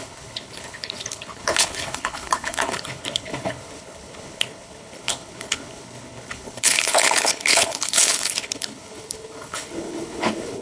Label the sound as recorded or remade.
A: remade